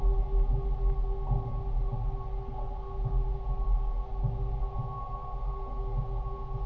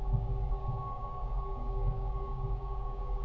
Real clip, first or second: first